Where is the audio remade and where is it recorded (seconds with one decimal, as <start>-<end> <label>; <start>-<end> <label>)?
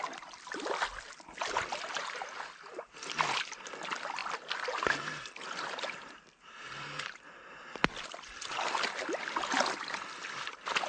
0.0-10.9 recorded